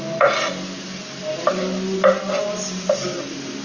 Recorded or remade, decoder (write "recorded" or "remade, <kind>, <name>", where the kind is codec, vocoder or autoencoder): recorded